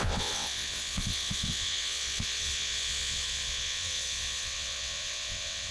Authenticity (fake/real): fake